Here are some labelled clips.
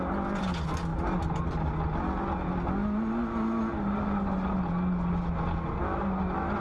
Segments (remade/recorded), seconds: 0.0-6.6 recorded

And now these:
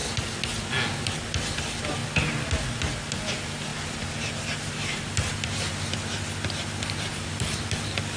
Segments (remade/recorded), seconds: 0.0-8.2 recorded

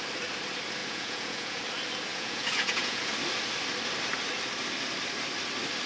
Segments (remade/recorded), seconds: 0.0-0.8 recorded; 0.8-1.6 remade; 1.6-2.1 recorded; 2.1-3.1 remade; 3.1-5.9 recorded

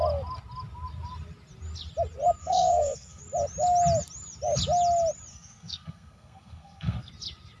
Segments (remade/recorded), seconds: 0.0-2.4 recorded; 2.4-3.2 remade; 3.2-5.3 recorded; 5.3-7.1 remade; 7.1-7.6 recorded

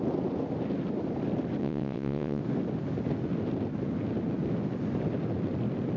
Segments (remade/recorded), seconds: 0.0-1.6 recorded; 1.6-2.4 remade; 2.4-6.0 recorded

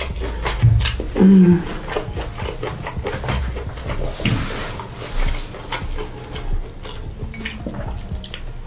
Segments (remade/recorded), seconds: 0.0-8.7 recorded

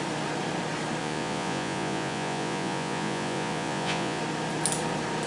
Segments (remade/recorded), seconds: 0.0-1.0 recorded; 1.0-4.2 remade; 4.2-5.3 recorded

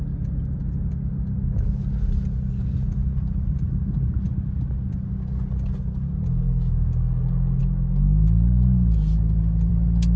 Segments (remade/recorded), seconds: 0.0-10.2 recorded